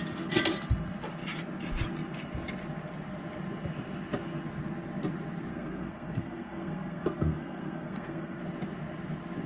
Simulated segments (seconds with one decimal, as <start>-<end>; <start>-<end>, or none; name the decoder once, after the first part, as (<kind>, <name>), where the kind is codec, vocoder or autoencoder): 5.5-8.4 (codec, SNAC)